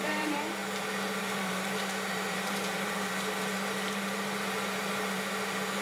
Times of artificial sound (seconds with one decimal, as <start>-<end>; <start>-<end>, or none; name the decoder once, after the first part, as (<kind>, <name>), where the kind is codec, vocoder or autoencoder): 0.0-0.6 (vocoder, BigVGAN v2); 1.2-5.8